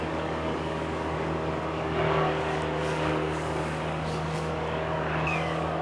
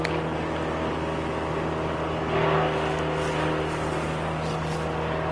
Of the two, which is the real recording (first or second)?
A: second